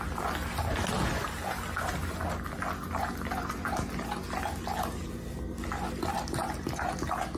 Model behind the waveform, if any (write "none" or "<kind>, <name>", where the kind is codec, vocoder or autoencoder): none